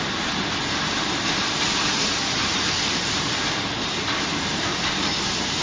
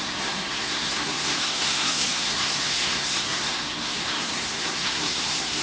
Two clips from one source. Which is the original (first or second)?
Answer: first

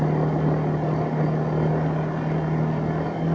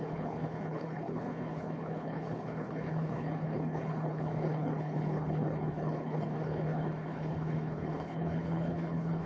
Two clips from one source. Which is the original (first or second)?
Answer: first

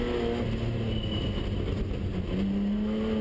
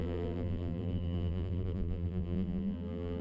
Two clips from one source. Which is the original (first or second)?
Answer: first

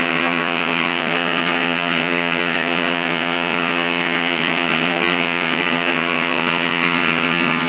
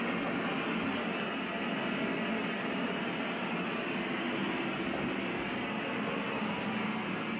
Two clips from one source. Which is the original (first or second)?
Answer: second